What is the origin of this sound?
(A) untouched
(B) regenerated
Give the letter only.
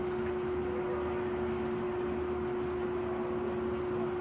A